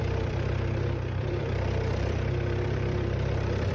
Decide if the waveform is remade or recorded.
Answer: remade